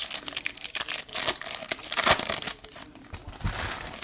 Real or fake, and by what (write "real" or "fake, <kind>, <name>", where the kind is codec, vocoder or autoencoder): real